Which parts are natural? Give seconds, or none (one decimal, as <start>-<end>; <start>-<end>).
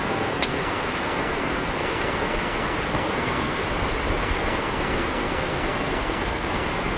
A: 3.6-4.2